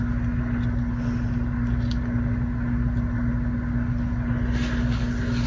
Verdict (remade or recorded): recorded